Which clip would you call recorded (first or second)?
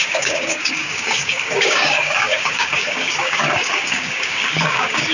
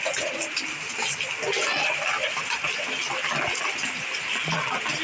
second